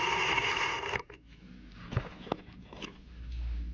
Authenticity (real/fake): real